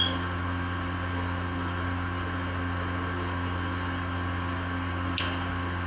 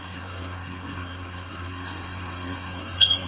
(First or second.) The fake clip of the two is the second